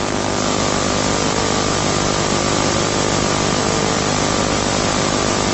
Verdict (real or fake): real